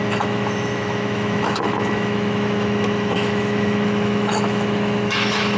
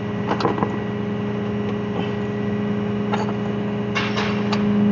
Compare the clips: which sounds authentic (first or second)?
second